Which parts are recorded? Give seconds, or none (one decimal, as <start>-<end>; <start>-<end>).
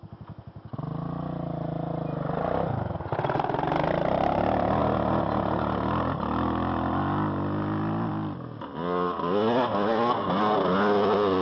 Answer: 0.0-11.4